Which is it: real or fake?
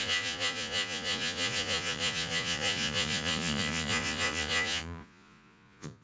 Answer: fake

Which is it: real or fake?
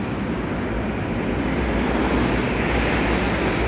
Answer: real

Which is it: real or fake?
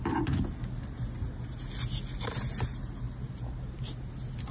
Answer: real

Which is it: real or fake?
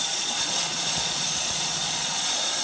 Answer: fake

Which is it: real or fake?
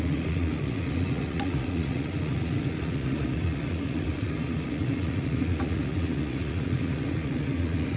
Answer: fake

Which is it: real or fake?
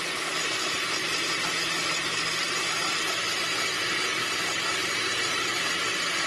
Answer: real